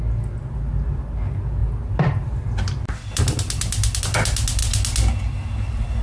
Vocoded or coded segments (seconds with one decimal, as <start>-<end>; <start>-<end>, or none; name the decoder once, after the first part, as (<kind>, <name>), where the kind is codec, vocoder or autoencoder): none